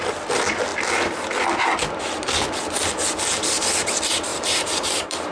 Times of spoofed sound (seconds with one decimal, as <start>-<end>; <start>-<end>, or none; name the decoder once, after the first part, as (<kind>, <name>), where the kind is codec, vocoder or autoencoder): 4.3-5.3 (vocoder, BigVGAN v2)